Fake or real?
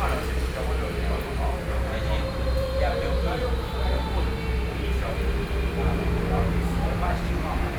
real